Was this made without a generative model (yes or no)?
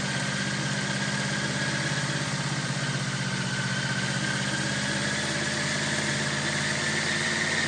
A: yes